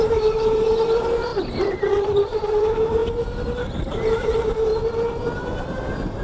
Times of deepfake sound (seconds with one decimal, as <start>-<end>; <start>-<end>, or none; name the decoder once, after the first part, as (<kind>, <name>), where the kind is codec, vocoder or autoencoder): 0.0-4.7 (vocoder, BigVGAN v2); 5.6-6.2